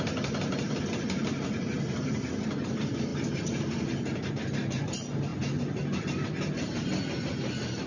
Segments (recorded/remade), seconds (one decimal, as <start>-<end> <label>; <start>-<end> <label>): 0.0-7.9 recorded